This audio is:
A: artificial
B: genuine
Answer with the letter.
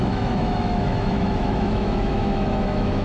A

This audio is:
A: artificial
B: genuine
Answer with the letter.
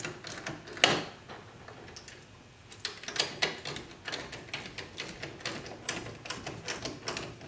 B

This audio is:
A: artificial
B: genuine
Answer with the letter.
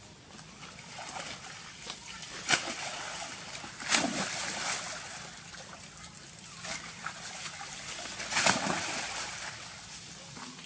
B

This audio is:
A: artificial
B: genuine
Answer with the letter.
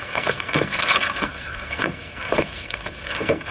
A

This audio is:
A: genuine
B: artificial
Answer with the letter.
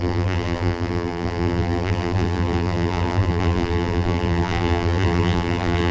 B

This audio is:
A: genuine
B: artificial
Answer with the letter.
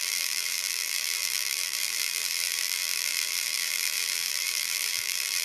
B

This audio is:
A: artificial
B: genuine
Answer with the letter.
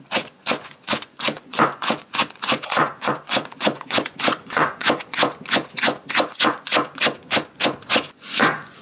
A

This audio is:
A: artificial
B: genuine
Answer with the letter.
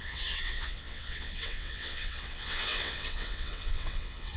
A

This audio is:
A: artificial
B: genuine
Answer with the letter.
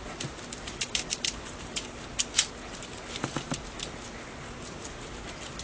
B